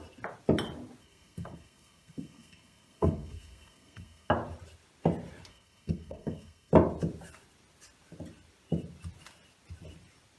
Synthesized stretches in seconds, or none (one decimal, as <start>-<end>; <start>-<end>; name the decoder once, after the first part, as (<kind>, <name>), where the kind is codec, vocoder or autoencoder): 1.0-4.3 (codec, SNAC); 5.5-6.7